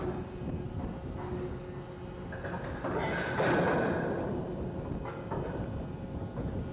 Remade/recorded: recorded